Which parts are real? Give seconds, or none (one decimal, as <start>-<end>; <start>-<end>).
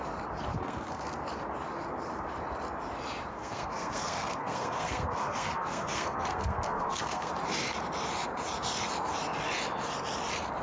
0.0-0.5; 1.2-3.3; 7.3-10.6